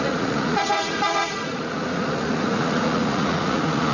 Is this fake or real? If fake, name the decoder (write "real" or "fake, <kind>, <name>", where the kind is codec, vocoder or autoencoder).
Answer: fake, vocoder, Vocos